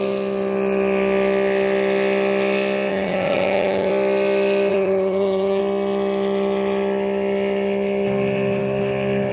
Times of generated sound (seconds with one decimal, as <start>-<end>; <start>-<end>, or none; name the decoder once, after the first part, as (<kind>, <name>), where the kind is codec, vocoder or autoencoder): 2.9-3.9 (vocoder, HiFi-GAN); 4.7-5.6